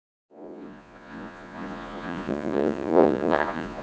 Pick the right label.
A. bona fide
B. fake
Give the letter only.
B